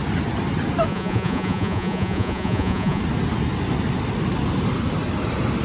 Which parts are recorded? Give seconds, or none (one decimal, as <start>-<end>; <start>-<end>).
0.0-0.9; 3.0-5.6